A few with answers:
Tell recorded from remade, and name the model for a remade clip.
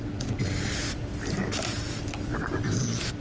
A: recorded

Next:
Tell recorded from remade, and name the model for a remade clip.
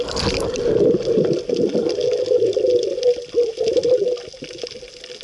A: recorded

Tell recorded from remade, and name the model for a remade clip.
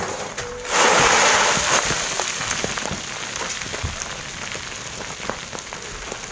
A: recorded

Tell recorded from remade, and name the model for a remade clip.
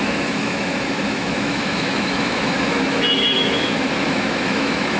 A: remade, autoencoder, DAC-VAE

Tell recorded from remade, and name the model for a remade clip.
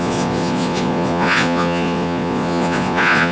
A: remade, vocoder, Vocos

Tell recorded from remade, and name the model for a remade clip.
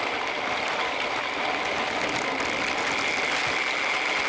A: recorded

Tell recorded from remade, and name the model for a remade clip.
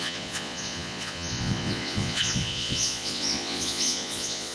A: remade, vocoder, Vocos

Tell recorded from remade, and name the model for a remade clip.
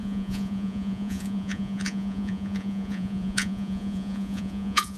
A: remade, vocoder, Vocos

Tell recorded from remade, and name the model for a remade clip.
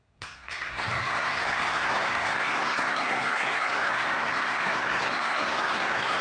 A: remade, codec, SNAC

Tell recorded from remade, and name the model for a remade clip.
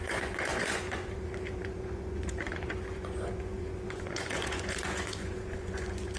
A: remade, vocoder, Vocos